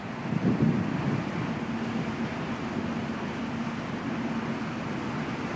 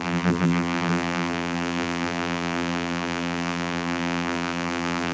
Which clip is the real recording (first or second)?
first